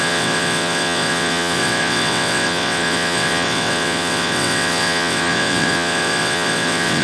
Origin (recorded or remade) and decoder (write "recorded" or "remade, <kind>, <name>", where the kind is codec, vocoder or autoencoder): remade, vocoder, WaveNeXt